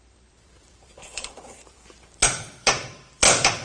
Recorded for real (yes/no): no